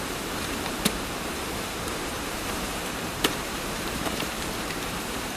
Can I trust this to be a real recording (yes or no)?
no